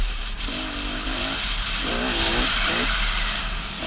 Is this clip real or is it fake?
real